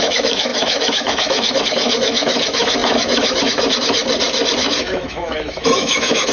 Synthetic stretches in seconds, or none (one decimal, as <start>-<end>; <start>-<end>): 0.0-4.0; 4.6-6.3